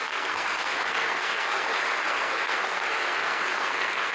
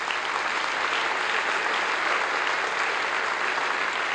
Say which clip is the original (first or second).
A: second